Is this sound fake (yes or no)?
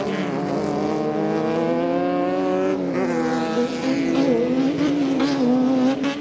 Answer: no